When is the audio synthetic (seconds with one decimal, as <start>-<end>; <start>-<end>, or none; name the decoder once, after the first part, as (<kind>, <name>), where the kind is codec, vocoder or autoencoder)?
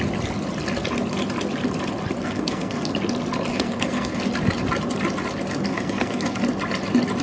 2.2-2.9 (codec, SNAC); 3.5-4.2; 5.7-6.4